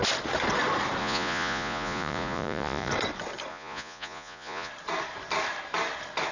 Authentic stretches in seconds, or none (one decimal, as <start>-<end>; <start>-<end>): 0.0-1.0; 2.9-3.5; 4.7-6.3